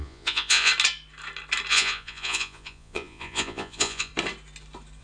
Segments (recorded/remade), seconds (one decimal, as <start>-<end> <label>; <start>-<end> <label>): 0.0-0.7 remade; 0.7-1.7 recorded; 1.7-4.1 remade; 4.1-5.0 recorded